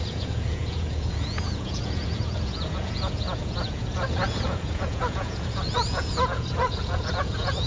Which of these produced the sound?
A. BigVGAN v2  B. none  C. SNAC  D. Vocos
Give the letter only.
D